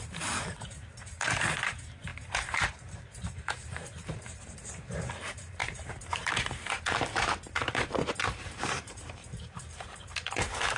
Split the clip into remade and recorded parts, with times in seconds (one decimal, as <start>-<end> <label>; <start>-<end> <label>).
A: 0.0-10.8 remade